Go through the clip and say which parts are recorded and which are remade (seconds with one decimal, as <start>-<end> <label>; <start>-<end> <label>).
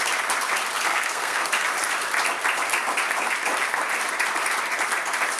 0.0-0.9 recorded; 0.9-1.5 remade; 1.5-5.4 recorded